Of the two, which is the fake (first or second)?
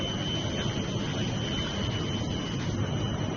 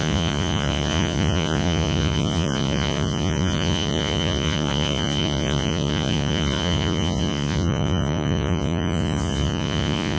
second